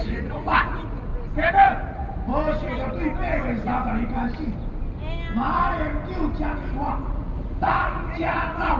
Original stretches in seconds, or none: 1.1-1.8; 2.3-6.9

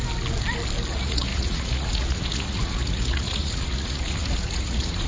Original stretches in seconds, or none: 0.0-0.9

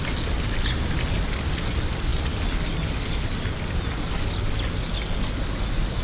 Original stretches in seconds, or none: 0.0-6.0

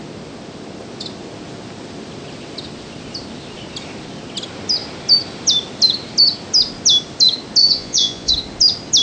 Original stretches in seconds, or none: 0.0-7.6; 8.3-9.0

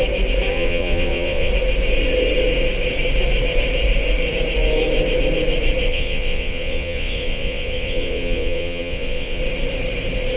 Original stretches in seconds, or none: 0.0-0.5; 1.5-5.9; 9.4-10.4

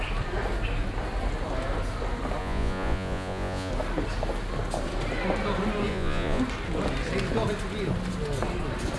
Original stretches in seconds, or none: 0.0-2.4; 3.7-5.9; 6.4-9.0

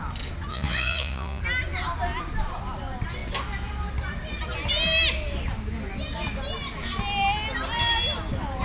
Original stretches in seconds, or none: 0.0-0.5; 1.4-8.6

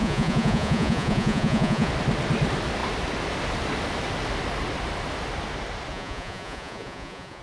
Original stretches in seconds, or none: 1.9-5.9